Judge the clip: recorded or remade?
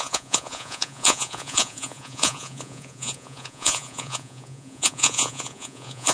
remade